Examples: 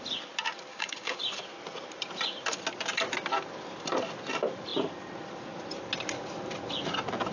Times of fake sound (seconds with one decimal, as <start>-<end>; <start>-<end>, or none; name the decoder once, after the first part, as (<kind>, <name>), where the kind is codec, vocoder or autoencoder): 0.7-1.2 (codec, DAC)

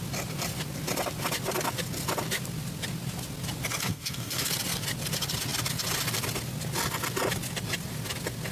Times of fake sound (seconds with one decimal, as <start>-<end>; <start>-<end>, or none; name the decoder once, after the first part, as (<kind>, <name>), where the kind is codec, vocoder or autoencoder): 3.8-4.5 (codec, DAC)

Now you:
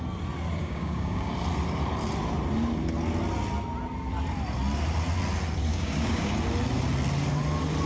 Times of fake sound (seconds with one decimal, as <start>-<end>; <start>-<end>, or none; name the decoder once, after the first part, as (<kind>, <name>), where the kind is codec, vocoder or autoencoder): 0.6-1.3 (codec, DAC); 5.7-6.3